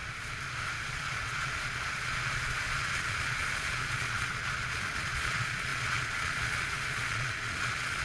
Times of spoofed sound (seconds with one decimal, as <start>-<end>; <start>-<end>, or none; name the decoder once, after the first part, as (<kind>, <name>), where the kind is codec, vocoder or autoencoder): 0.9-8.0 (vocoder, Vocos)